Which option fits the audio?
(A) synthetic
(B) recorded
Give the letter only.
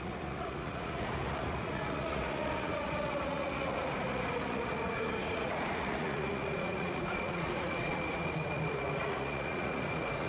A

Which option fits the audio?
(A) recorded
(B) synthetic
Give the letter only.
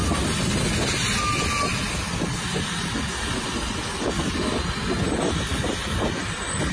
A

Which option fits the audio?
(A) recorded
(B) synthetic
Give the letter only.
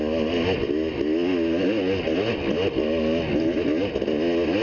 A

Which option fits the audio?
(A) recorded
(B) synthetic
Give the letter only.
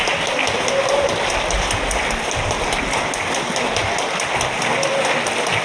A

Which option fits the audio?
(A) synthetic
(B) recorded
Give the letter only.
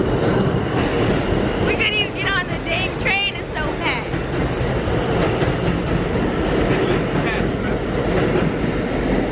B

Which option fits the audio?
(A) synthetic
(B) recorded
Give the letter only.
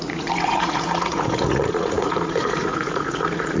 A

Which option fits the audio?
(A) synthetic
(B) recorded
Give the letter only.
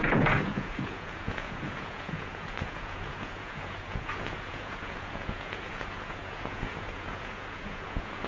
A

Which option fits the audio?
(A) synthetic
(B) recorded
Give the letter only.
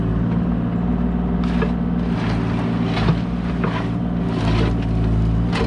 B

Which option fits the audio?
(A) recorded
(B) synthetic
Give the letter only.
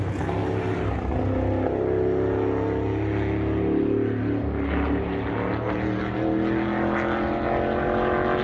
A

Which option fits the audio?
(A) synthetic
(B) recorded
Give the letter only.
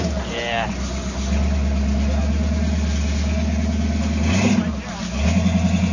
B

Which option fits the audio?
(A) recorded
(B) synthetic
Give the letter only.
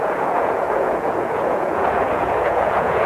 B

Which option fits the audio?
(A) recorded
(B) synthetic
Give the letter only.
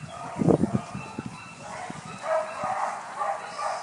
B